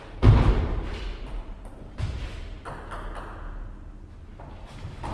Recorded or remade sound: recorded